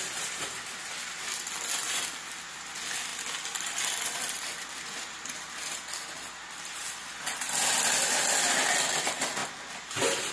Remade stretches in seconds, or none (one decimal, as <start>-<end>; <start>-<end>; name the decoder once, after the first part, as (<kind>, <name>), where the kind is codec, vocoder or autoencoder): none

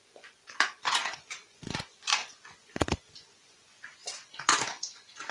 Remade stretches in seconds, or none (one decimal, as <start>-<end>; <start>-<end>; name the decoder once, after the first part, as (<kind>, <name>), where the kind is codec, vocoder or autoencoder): 0.0-5.3 (vocoder, Vocos)

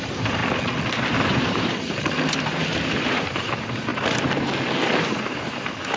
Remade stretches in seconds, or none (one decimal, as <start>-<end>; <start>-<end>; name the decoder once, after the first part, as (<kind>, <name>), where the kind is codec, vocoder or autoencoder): 0.0-0.4 (vocoder, BigVGAN v2); 1.0-3.9; 4.9-6.0

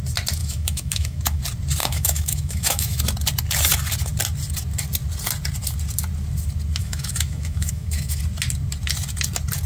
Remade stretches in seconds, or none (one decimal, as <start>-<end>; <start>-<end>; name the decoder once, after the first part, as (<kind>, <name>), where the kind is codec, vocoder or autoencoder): 0.4-1.4 (autoencoder, DAC-VAE); 1.8-3.0; 6.8-8.2

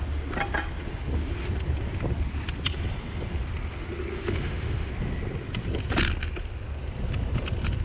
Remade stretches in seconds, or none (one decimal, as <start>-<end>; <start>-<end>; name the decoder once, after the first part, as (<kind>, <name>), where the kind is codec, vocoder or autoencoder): 4.1-4.9 (autoencoder, DAC-VAE)